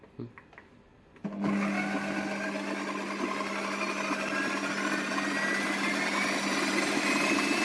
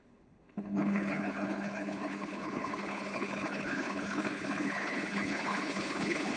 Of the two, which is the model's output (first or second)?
second